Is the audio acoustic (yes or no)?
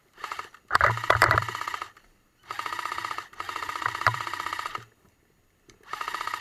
no